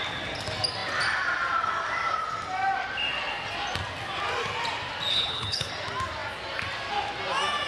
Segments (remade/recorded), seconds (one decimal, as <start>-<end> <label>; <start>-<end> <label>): 0.0-5.1 recorded; 5.1-5.7 remade; 5.7-7.7 recorded